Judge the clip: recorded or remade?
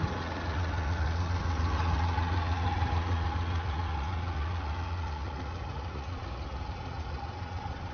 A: remade